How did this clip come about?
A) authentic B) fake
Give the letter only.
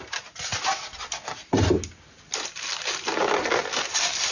A